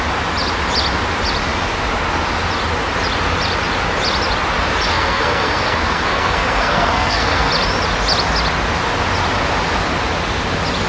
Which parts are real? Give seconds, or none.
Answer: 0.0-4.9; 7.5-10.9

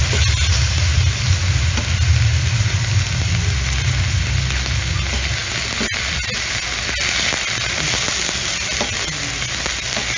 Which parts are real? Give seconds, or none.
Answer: 0.0-10.2

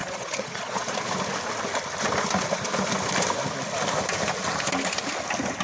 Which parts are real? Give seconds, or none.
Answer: 1.1-5.6